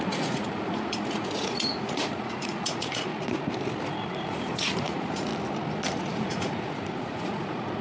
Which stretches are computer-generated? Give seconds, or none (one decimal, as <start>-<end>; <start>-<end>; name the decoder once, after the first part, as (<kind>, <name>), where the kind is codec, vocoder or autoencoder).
0.0-3.1 (vocoder, Vocos); 4.1-5.3; 5.9-7.8